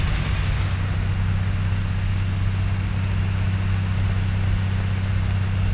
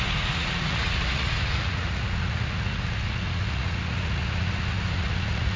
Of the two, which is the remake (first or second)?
second